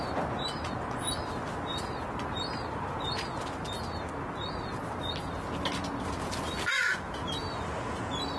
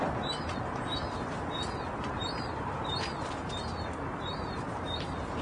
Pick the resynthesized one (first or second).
second